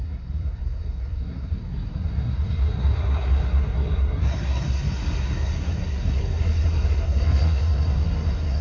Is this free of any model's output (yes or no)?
no